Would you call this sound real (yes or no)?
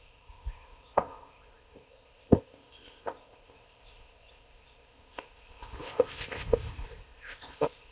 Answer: no